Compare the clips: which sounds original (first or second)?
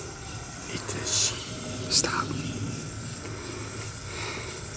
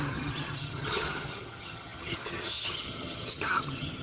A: first